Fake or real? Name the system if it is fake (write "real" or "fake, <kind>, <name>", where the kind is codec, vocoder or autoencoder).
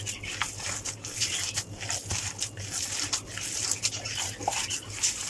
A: real